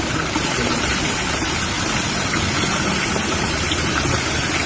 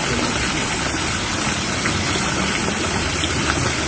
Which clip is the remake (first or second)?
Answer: first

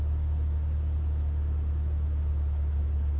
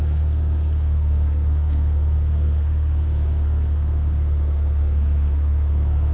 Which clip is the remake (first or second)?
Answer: second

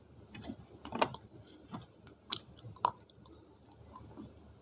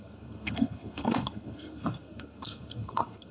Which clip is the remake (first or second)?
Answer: second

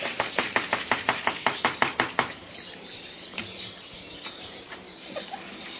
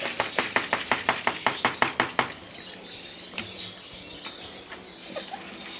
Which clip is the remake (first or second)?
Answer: first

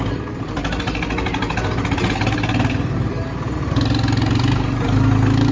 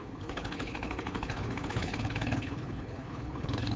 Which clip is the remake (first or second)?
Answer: second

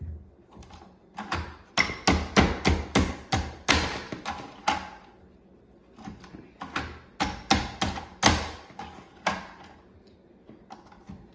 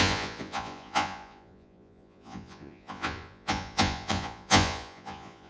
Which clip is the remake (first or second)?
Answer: second